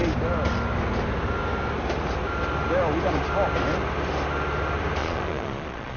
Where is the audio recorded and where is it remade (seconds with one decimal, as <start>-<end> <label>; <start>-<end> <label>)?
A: 0.0-5.0 recorded; 5.0-6.0 remade